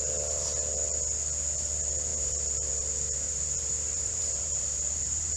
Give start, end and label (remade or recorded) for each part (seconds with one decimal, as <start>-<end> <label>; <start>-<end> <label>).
0.0-2.1 recorded; 2.1-5.4 remade